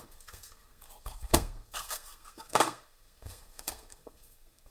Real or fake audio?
fake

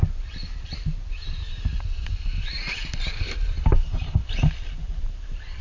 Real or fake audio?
real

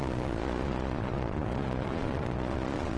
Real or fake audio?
fake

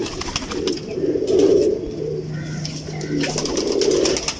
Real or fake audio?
real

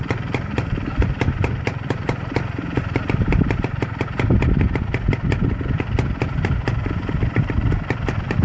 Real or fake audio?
real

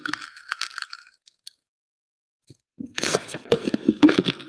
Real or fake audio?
fake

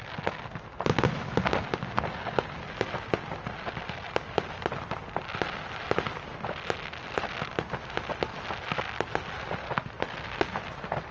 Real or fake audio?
real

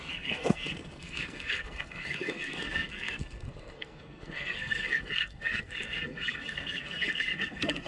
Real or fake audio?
fake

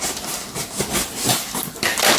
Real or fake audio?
real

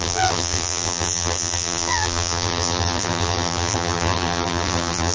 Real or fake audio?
fake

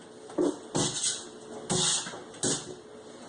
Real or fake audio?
real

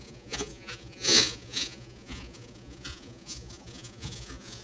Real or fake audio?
fake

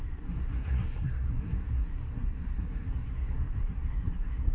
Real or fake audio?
fake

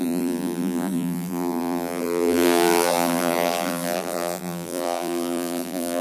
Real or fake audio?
fake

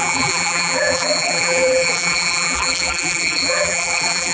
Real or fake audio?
fake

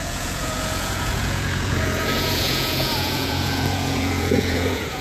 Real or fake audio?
fake